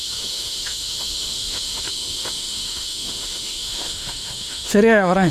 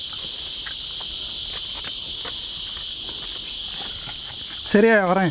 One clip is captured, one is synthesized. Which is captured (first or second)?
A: second